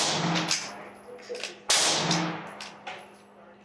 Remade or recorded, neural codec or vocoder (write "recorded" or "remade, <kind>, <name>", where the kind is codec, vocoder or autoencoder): recorded